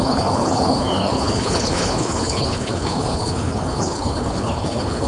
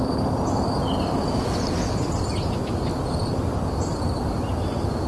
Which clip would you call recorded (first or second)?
second